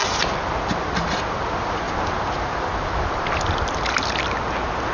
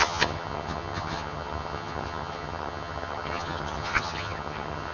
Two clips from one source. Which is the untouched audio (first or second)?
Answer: first